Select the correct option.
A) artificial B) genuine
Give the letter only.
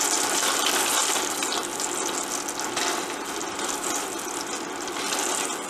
B